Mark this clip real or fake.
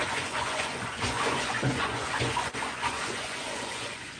fake